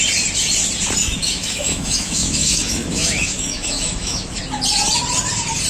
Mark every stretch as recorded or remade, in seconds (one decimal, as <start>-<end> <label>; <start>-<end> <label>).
0.0-1.0 recorded; 1.0-4.4 remade; 4.4-5.7 recorded